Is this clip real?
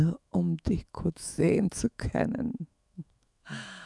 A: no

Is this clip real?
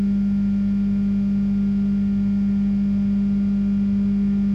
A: yes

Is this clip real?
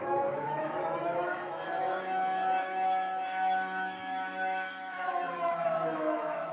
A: no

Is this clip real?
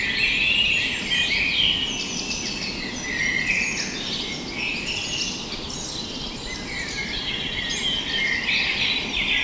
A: yes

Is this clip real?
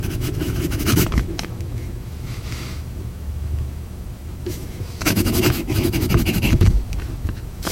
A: no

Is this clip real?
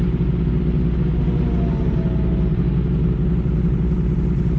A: yes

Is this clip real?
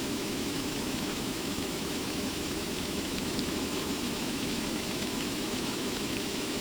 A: no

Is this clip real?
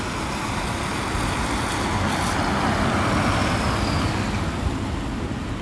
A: yes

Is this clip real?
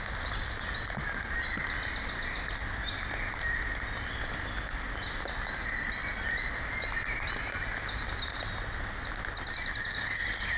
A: yes